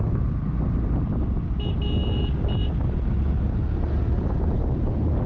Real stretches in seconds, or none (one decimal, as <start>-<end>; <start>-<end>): 0.0-5.3